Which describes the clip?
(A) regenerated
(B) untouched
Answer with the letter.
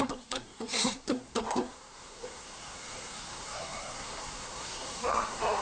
A